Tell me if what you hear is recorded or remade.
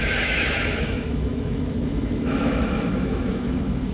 remade